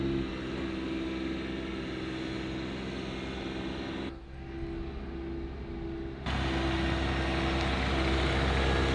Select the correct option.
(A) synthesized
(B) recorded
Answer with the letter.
B